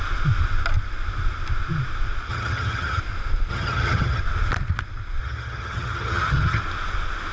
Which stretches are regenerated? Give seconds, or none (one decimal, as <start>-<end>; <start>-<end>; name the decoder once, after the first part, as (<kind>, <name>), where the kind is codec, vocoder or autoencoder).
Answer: 2.3-3.0 (vocoder, HiFi-GAN); 3.5-4.2; 5.2-6.6